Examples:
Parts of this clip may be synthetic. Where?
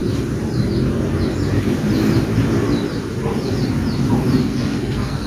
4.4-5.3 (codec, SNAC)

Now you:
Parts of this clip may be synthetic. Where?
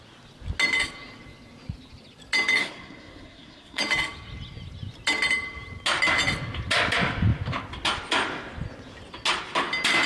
2.6-3.8 (codec, SNAC)